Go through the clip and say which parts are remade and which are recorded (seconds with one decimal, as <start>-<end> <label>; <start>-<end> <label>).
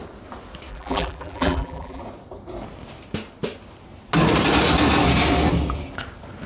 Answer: 0.0-0.7 recorded; 0.7-2.0 remade; 2.0-6.5 recorded